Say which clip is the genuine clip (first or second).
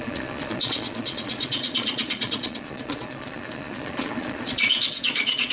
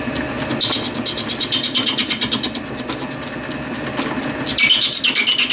second